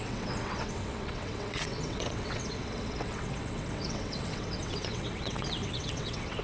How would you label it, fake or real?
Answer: fake